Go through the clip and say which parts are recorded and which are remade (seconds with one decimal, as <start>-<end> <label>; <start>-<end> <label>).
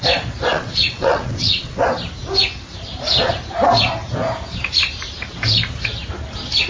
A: 0.0-0.5 recorded; 0.5-1.8 remade; 1.8-6.7 recorded